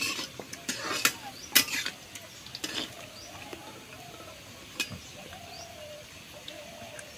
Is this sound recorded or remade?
recorded